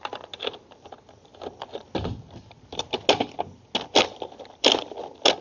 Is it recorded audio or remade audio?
recorded